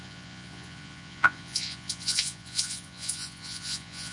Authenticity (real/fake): fake